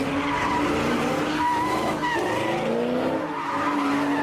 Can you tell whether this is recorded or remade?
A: recorded